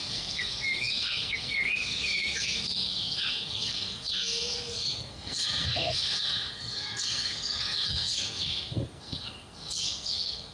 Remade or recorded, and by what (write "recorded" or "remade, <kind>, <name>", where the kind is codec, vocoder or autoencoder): remade, codec, SNAC